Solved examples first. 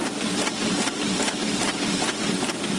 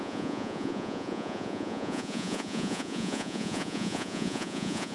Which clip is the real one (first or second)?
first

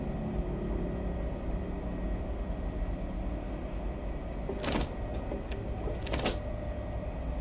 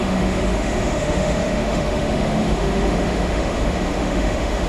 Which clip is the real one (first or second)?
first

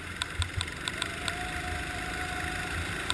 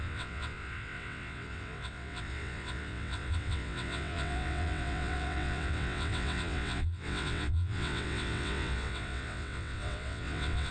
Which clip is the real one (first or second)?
first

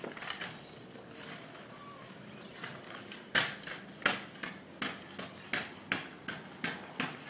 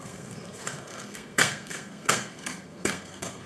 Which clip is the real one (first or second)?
first